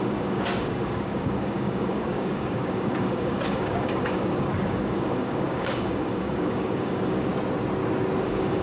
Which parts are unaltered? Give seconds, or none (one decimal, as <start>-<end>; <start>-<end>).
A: 7.3-8.2

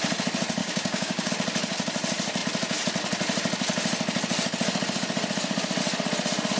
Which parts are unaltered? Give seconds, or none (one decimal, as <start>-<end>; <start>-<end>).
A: 0.0-0.6; 1.3-6.6

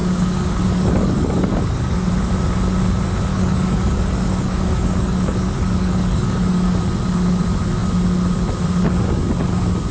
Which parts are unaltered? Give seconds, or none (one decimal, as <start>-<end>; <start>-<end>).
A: 2.1-3.3; 6.8-9.9